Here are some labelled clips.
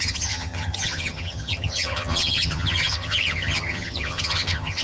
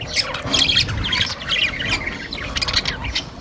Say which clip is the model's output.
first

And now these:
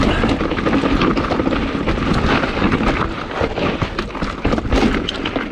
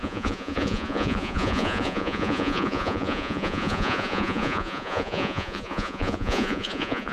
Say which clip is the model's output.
second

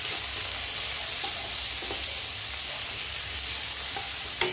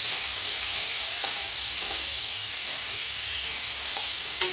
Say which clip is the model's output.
second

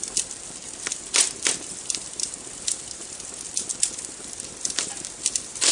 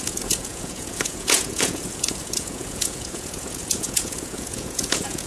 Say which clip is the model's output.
second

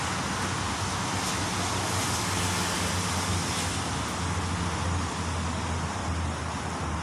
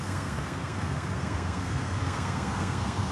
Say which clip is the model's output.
second